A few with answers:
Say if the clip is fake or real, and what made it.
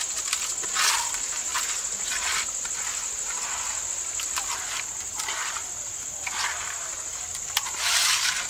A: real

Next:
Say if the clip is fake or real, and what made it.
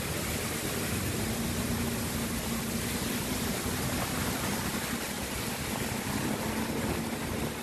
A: real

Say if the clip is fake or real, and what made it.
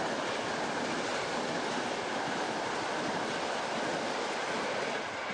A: real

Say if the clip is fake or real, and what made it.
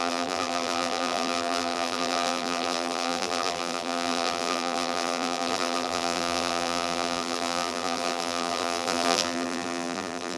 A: fake, vocoder, BigVGAN v2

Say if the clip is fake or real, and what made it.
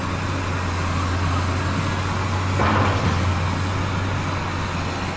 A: real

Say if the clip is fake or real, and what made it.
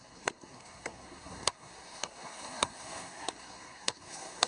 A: fake, codec, SNAC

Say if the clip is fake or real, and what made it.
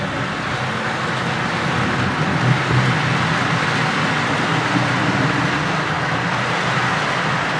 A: real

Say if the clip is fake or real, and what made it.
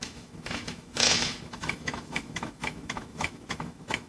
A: fake, autoencoder, DAC-VAE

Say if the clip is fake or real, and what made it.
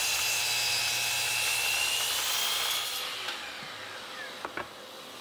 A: real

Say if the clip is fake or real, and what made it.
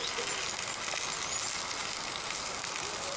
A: real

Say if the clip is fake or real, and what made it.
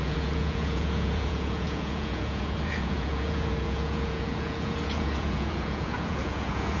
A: fake, vocoder, Vocos